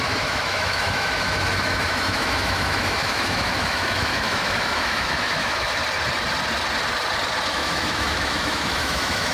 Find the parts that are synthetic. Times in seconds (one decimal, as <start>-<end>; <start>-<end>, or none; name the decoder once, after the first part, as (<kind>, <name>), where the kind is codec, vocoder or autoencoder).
0.0-5.8 (autoencoder, DAC-VAE); 7.5-9.3

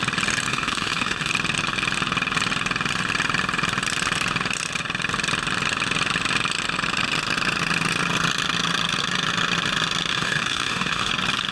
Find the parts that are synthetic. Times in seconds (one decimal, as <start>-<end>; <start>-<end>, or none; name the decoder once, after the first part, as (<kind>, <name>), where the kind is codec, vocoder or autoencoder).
0.5-1.3 (autoencoder, DAC-VAE); 10.1-11.1

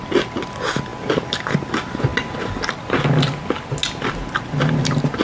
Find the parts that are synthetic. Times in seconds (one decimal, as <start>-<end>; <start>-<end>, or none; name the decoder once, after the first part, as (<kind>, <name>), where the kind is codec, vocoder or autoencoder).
none

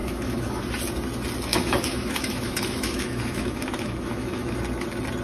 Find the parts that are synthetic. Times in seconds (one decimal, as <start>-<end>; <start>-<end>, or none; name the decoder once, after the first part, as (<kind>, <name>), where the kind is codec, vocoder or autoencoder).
0.0-0.6 (autoencoder, DAC-VAE); 1.5-4.6

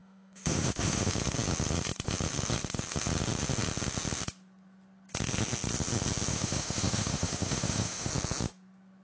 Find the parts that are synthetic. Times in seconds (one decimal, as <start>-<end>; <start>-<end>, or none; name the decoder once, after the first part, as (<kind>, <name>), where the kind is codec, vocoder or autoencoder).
0.0-1.1 (autoencoder, DAC-VAE); 6.3-8.1

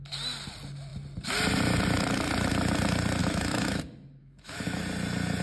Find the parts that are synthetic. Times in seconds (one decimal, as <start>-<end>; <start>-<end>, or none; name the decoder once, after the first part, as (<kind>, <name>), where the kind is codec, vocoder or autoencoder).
3.2-3.8 (autoencoder, DAC-VAE); 4.2-4.8

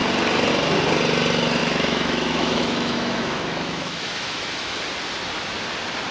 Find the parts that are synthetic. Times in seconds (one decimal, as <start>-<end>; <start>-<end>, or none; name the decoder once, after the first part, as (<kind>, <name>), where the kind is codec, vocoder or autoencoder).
1.6-4.8 (autoencoder, DAC-VAE)